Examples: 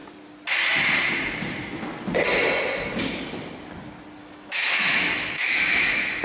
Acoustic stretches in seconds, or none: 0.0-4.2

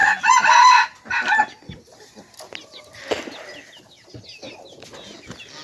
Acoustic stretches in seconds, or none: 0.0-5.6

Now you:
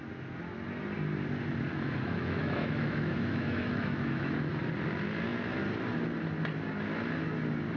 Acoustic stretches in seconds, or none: 0.0-1.7; 4.5-7.8

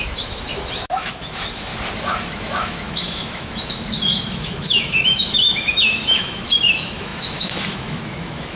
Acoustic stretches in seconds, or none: 1.7-2.4

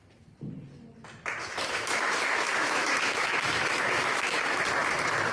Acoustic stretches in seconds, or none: 0.0-1.4; 4.6-5.3

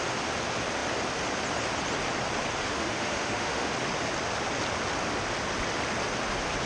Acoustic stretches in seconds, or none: 0.0-2.7; 3.7-6.7